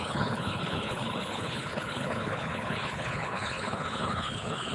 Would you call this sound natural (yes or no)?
no